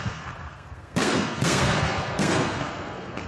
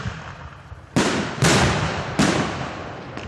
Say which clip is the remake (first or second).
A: first